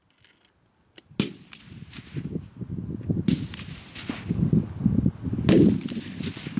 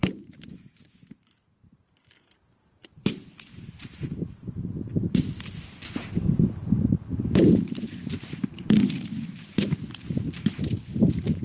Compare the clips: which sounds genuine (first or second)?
first